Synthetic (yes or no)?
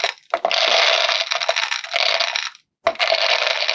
no